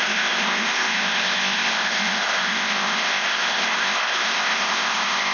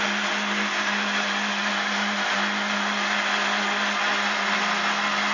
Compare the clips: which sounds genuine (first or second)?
second